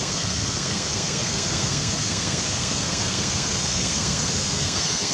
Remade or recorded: remade